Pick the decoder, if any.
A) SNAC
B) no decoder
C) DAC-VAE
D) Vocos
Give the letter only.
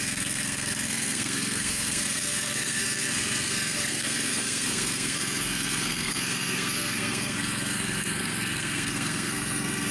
A